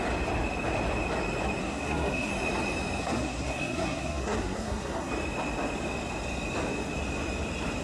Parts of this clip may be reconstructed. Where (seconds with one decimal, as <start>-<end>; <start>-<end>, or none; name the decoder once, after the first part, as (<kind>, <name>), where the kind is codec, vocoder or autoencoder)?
1.6-2.3 (codec, SNAC); 3.0-5.1